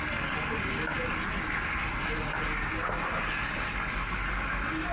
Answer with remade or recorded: recorded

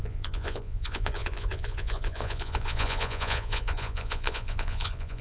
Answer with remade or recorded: remade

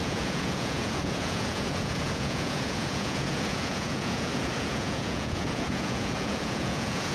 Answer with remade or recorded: remade